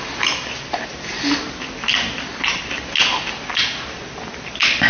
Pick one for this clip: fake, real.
real